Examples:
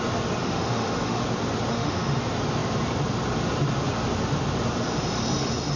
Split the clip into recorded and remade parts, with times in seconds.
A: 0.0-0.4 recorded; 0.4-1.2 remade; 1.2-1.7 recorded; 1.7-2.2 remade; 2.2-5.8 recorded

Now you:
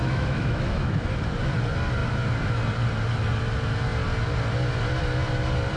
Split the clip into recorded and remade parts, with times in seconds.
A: 0.0-1.1 remade; 1.1-5.8 recorded

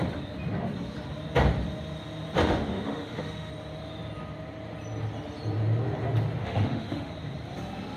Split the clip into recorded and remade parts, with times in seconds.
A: 0.0-2.4 recorded; 2.4-3.5 remade; 3.5-6.4 recorded; 6.4-7.1 remade; 7.1-8.0 recorded

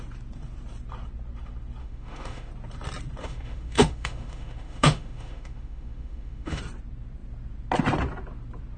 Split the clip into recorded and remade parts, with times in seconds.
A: 0.0-1.8 recorded; 1.8-2.5 remade; 2.5-3.2 recorded; 3.2-6.6 remade; 6.6-8.8 recorded

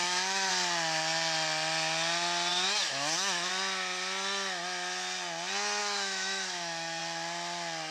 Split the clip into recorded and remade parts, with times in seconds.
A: 0.0-0.5 remade; 0.5-2.5 recorded; 2.5-3.5 remade; 3.5-5.8 recorded; 5.8-7.0 remade; 7.0-7.9 recorded

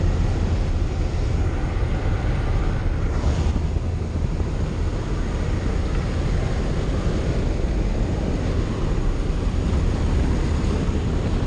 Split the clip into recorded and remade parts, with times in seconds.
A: 0.0-11.5 recorded

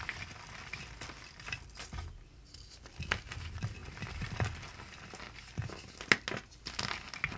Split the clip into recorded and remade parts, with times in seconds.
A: 0.0-7.4 recorded

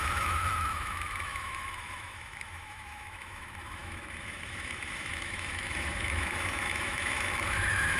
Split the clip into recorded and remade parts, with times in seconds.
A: 0.0-8.0 remade